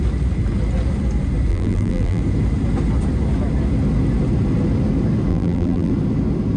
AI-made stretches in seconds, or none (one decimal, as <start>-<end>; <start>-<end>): 1.5-2.2; 5.3-5.9

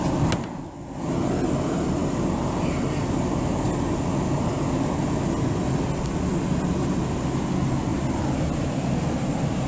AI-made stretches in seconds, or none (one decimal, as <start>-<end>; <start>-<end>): none